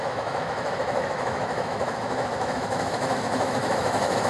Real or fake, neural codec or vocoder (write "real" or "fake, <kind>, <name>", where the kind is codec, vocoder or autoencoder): fake, autoencoder, DAC-VAE